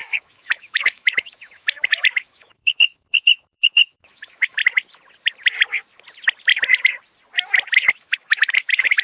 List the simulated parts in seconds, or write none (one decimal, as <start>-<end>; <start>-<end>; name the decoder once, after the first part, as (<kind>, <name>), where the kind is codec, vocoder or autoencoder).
0.0-4.6 (autoencoder, DAC-VAE); 7.9-9.0